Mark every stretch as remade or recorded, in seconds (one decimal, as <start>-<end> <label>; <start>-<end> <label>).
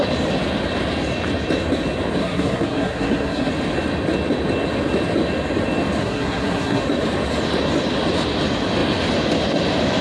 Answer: 0.0-2.2 recorded; 2.2-3.5 remade; 3.5-6.0 recorded; 6.0-6.8 remade; 6.8-10.0 recorded